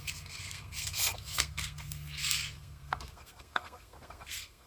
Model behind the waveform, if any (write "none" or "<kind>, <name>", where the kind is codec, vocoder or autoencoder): codec, SNAC